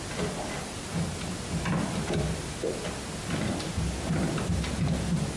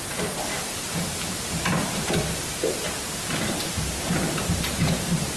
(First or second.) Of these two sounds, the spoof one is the second